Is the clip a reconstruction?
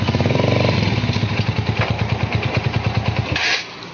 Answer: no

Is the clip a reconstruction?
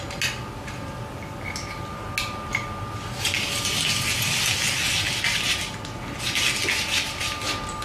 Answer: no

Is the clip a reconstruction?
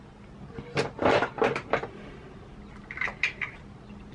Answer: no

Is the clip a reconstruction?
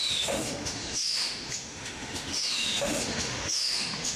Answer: yes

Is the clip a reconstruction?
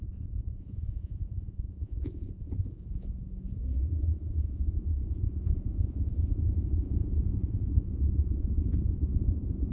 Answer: yes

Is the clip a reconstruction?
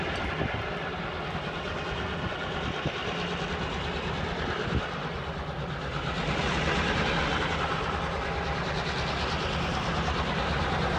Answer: no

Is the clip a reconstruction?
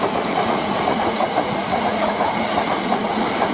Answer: yes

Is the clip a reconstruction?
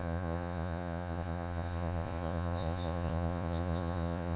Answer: yes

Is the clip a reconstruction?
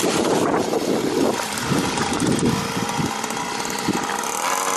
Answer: no